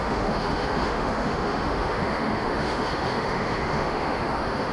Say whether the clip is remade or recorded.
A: remade